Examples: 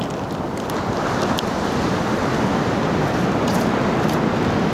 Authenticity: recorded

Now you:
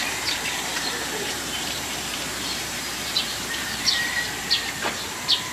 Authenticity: remade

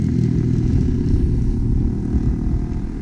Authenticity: recorded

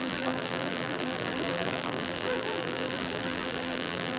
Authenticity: remade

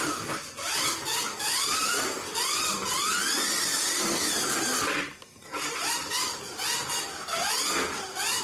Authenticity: recorded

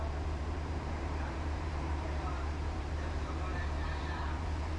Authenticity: remade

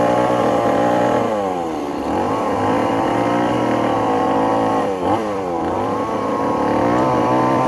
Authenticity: remade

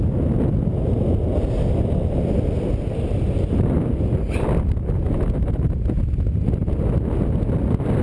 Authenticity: recorded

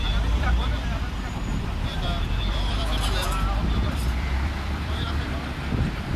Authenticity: remade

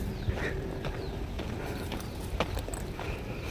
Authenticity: recorded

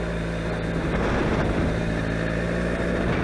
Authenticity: recorded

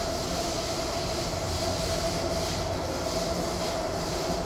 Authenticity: recorded